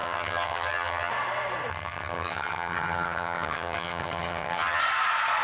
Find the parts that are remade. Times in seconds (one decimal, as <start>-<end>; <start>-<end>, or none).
0.0-1.1; 1.7-4.8